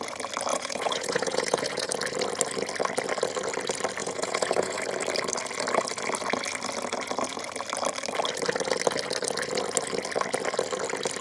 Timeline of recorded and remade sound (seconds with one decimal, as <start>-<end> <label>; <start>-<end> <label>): 0.0-0.5 recorded; 0.5-1.9 remade; 1.9-4.0 recorded; 4.0-4.8 remade; 4.8-11.2 recorded